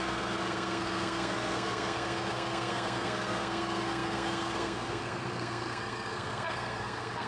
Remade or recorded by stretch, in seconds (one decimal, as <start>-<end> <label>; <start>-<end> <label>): 0.0-7.3 remade